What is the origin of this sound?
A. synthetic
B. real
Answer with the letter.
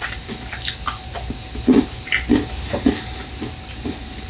B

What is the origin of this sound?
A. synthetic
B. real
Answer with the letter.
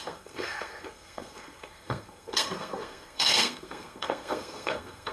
A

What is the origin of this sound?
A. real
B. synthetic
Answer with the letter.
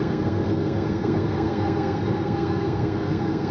B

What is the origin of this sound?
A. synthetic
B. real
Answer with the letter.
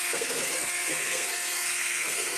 A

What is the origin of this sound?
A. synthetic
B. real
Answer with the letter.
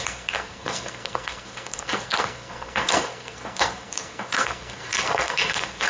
A